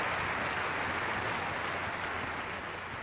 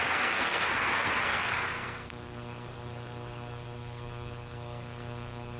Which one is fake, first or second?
second